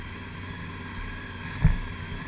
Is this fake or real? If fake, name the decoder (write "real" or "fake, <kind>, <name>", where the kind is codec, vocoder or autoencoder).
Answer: real